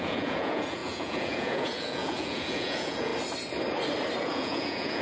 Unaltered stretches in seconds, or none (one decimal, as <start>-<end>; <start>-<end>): 3.1-4.2